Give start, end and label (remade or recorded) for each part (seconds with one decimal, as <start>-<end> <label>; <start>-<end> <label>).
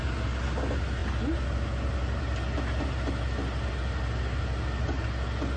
0.0-5.6 recorded